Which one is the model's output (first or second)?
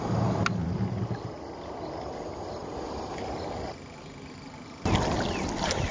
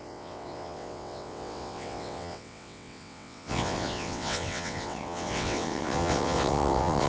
second